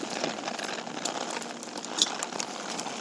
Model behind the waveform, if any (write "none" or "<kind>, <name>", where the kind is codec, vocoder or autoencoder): none